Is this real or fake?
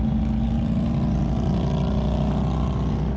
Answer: real